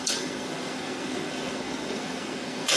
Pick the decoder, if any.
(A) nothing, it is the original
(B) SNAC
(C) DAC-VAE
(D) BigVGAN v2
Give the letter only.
B